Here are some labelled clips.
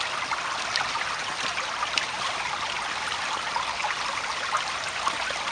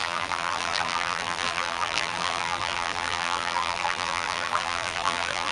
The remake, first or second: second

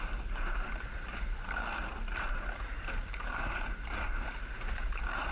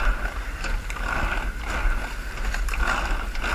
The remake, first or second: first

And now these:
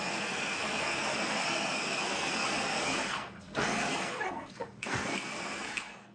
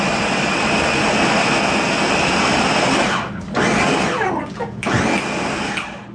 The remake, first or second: first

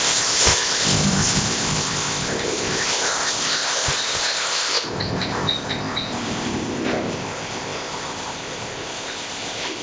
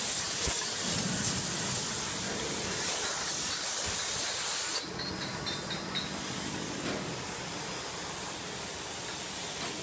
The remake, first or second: first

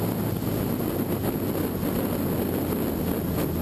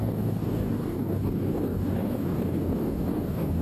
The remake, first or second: second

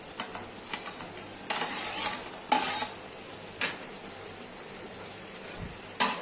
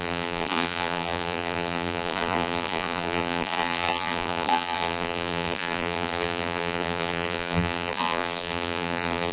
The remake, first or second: second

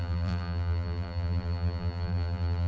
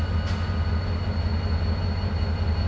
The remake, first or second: first